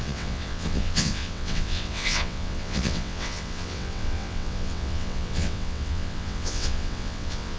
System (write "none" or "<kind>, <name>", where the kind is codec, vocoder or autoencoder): vocoder, WaveNeXt